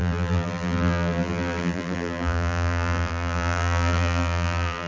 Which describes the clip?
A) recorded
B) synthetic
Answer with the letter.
B